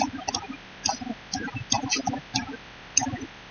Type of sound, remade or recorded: recorded